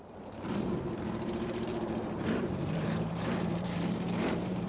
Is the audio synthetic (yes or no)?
yes